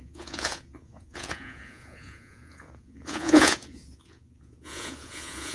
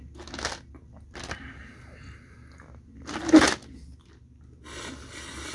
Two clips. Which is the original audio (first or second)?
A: second